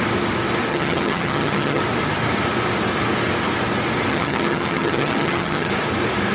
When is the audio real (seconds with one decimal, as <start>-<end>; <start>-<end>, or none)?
0.0-0.7; 1.8-4.1; 5.7-6.3